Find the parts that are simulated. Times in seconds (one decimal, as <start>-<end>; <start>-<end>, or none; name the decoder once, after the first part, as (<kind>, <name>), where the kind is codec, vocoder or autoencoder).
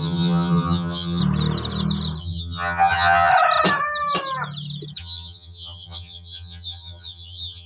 0.0-1.2 (vocoder, HiFi-GAN); 2.2-3.3; 5.0-7.7